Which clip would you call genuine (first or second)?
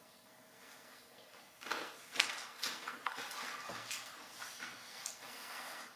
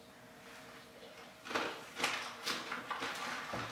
second